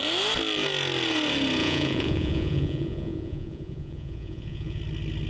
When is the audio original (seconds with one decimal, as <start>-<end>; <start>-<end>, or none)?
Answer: 0.0-1.6; 4.8-5.3